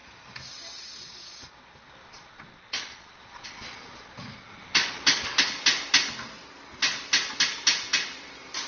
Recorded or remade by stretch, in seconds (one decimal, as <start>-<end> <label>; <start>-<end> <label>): 0.0-2.0 recorded; 2.0-5.0 remade; 5.0-8.7 recorded